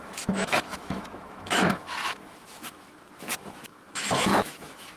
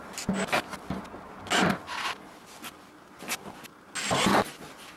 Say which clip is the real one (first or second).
second